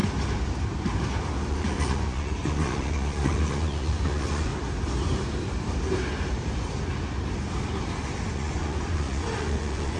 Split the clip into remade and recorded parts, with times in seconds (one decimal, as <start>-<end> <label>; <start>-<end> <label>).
0.0-1.5 recorded; 1.5-4.5 remade; 4.5-8.3 recorded; 8.3-10.0 remade